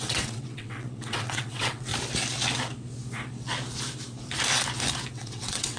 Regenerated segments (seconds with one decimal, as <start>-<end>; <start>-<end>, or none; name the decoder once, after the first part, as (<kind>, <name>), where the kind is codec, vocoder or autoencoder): 0.0-1.9 (vocoder, WaveNeXt); 5.1-5.8